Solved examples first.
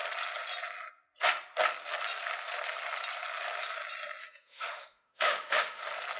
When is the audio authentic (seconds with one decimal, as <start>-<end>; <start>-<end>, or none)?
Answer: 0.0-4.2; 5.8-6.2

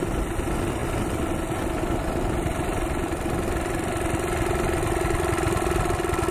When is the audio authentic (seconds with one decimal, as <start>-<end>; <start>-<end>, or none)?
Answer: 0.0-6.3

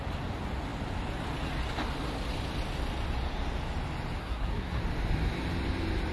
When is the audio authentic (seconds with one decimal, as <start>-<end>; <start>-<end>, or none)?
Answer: 0.0-4.2; 4.8-6.1

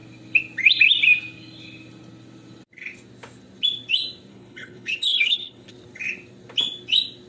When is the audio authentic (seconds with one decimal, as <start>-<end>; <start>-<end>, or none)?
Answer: 0.0-4.3; 5.7-7.3

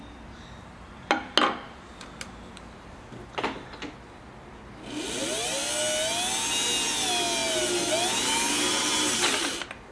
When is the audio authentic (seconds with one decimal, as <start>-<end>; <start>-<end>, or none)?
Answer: 0.0-9.9

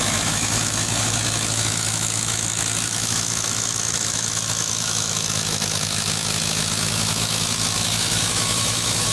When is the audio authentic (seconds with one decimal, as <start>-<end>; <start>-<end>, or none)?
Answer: none